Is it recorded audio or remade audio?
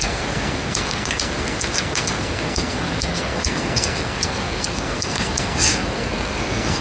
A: remade